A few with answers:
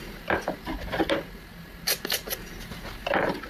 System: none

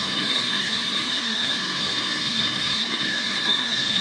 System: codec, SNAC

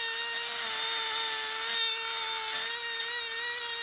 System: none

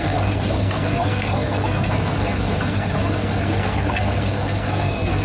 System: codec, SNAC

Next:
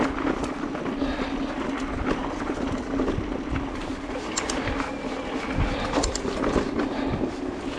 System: none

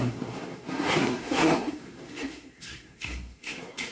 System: codec, SNAC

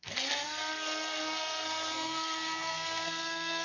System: codec, SNAC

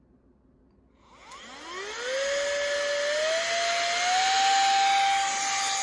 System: none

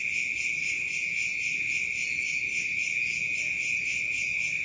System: none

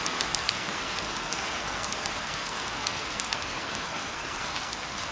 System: codec, SNAC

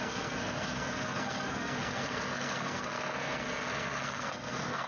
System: codec, SNAC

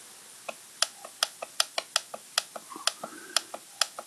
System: none